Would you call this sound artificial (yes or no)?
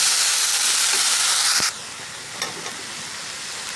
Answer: no